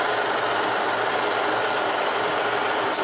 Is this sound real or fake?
real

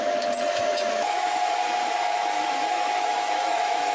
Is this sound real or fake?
fake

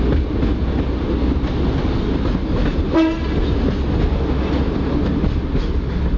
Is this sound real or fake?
real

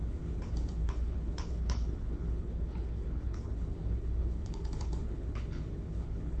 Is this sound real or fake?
fake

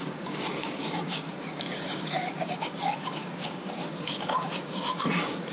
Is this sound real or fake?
fake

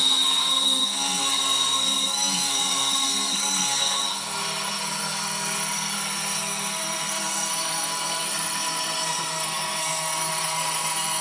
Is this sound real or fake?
fake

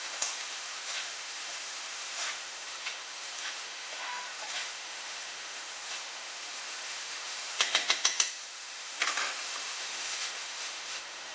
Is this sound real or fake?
fake